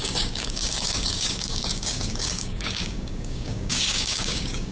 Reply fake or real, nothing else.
fake